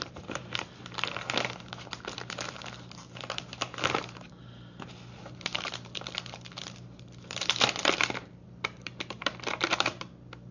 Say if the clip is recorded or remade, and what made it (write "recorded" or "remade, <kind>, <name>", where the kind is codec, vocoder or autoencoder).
remade, vocoder, BigVGAN v2